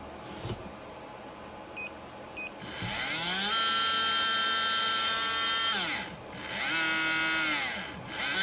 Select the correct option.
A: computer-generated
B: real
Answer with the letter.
B